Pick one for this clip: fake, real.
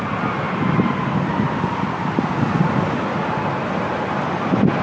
real